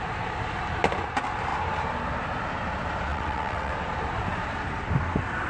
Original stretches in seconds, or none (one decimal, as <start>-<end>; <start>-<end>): 0.0-3.1; 3.7-5.5